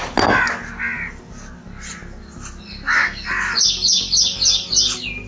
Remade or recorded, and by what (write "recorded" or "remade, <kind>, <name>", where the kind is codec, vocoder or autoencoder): recorded